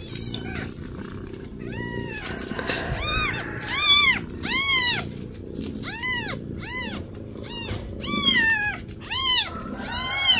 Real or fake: fake